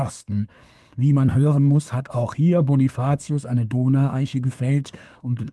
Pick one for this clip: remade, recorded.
remade